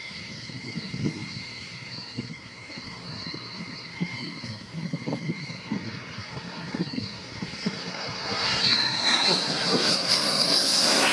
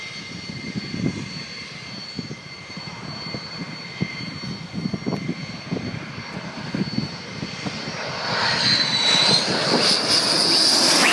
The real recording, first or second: second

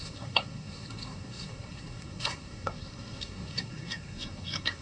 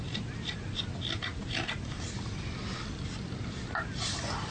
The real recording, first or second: second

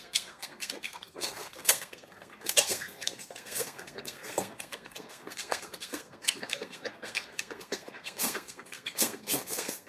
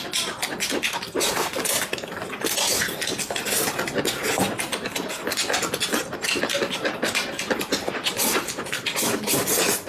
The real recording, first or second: second